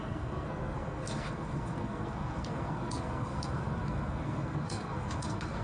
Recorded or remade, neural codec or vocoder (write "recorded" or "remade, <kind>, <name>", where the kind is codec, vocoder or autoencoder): remade, codec, SNAC